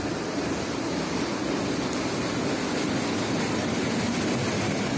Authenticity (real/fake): real